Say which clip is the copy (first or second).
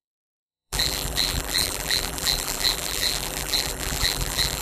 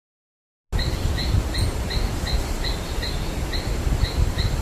first